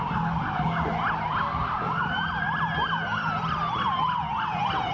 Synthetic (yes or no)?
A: no